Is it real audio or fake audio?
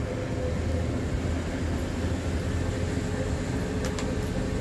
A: real